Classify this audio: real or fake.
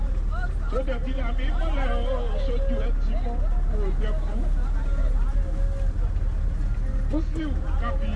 real